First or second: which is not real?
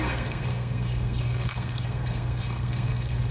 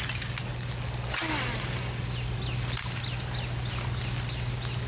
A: first